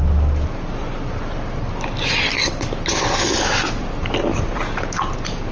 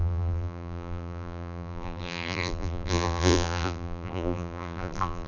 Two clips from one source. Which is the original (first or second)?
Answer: first